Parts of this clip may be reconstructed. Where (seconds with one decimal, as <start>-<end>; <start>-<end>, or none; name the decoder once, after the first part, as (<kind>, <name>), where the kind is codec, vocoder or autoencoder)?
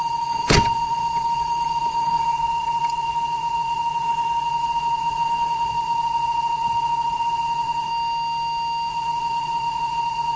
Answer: 0.0-7.9 (vocoder, WaveNeXt); 8.9-10.4